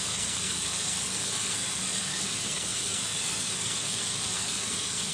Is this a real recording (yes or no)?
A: no